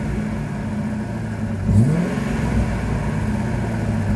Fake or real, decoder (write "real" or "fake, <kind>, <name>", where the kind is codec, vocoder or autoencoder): real